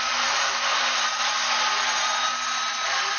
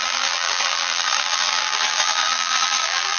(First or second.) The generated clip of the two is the second